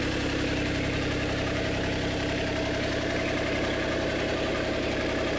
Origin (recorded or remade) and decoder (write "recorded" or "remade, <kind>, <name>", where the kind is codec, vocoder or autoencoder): remade, vocoder, BigVGAN v2